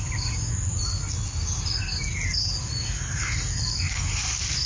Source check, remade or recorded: recorded